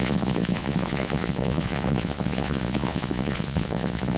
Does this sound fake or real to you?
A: fake